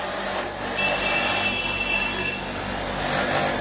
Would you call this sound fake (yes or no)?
no